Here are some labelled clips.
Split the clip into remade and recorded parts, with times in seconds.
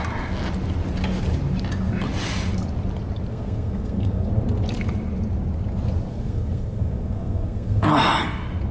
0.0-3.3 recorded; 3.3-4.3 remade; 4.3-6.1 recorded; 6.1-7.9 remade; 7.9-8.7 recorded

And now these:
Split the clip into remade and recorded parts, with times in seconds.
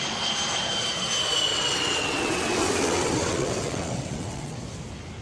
0.0-1.5 recorded; 1.5-4.6 remade; 4.6-5.2 recorded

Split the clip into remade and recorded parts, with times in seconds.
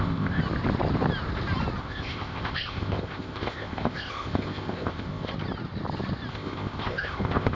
0.0-0.4 remade; 0.4-1.8 recorded; 1.8-5.3 remade; 5.3-6.3 recorded; 6.3-7.5 remade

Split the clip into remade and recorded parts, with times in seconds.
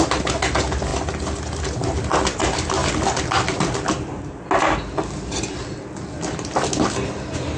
0.0-7.6 recorded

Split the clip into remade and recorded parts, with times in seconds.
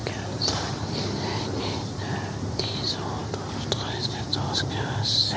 0.0-5.4 recorded